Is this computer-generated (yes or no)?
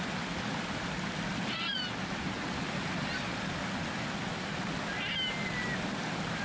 no